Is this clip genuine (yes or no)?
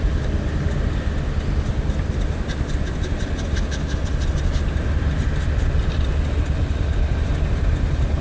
yes